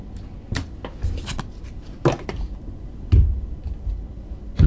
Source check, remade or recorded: recorded